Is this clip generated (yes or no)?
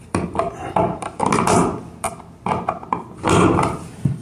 no